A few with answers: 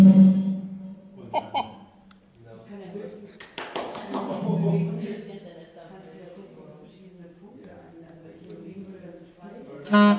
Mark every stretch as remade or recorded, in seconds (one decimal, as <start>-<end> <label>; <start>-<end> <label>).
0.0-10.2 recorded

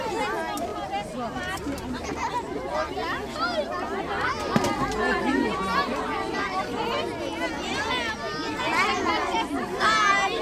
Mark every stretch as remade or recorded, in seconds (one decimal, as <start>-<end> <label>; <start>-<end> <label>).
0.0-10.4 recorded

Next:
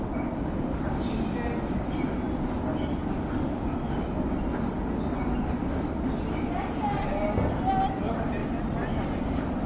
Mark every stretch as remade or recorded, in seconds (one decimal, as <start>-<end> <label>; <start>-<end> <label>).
0.0-9.7 recorded

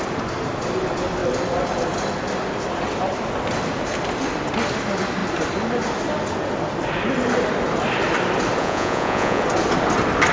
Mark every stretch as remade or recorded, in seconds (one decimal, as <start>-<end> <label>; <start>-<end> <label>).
0.0-8.6 recorded; 8.6-9.4 remade; 9.4-10.3 recorded

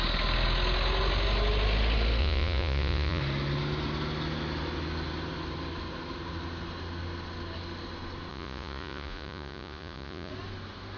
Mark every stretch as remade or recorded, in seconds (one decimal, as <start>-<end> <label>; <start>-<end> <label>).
0.0-2.2 recorded; 2.2-3.2 remade; 3.2-8.3 recorded; 8.3-10.3 remade; 10.3-11.0 recorded

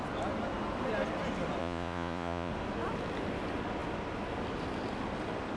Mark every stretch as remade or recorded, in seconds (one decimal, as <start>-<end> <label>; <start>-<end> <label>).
0.0-1.6 recorded; 1.6-2.5 remade; 2.5-5.6 recorded

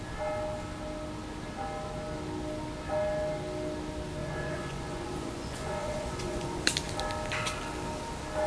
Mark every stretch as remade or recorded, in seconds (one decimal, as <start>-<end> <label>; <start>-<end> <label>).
0.0-4.2 recorded; 4.2-6.6 remade; 6.6-8.5 recorded

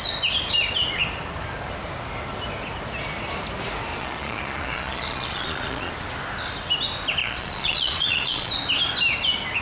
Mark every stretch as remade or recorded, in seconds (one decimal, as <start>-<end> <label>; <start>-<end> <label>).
0.0-4.0 recorded; 4.0-5.9 remade; 5.9-7.2 recorded; 7.2-8.5 remade; 8.5-9.6 recorded